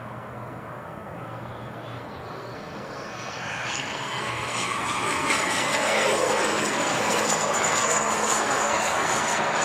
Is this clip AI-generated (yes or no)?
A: yes